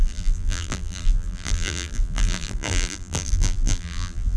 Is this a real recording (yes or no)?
no